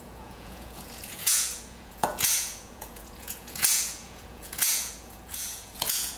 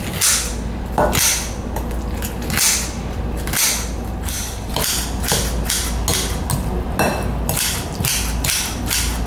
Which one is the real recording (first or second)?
second